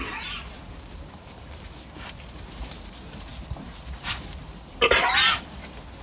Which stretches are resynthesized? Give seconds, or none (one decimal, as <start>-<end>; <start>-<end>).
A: none